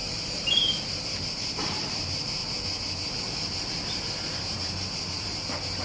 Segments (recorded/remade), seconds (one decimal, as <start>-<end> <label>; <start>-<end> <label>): 0.0-2.4 remade; 2.4-3.6 recorded; 3.6-5.8 remade